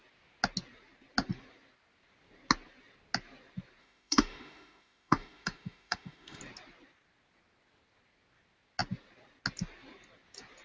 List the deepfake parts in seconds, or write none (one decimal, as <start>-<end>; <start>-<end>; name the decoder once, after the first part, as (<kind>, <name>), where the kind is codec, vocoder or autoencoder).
3.8-6.4 (autoencoder, DAC-VAE)

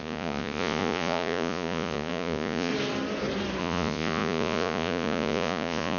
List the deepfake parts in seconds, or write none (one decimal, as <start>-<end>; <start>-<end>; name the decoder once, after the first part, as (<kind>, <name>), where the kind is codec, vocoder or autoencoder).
0.0-2.7 (vocoder, Vocos); 3.6-6.0

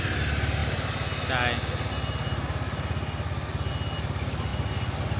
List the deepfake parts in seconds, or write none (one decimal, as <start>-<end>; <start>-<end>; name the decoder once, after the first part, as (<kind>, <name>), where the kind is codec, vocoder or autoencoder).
none

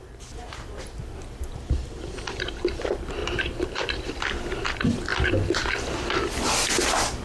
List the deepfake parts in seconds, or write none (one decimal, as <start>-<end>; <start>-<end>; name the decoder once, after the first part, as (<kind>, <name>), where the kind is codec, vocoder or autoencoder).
3.2-4.1 (vocoder, BigVGAN v2)